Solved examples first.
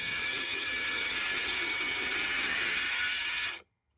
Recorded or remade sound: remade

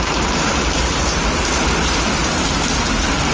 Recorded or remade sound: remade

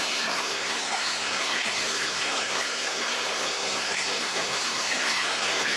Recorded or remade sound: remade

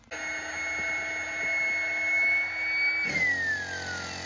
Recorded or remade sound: recorded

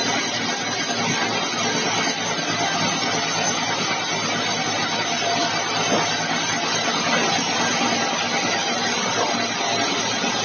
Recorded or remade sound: recorded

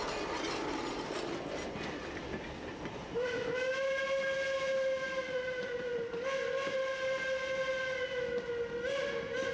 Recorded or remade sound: recorded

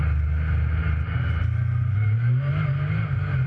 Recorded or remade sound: recorded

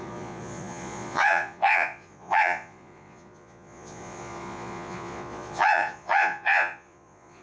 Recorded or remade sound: remade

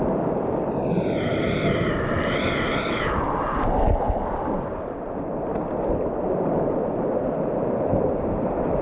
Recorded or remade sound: recorded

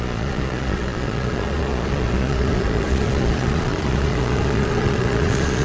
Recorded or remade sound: remade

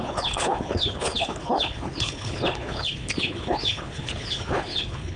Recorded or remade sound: remade